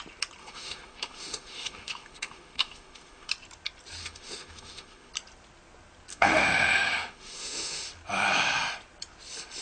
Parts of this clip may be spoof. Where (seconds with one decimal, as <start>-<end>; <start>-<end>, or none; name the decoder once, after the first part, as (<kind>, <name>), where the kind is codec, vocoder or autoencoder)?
0.4-3.3 (autoencoder, DAC-VAE); 4.0-5.1; 6.1-7.8